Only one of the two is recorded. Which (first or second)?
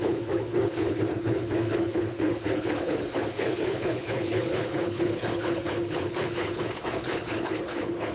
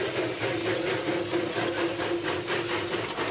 second